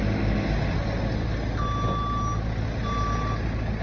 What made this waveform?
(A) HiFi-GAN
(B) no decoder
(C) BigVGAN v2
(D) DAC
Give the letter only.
B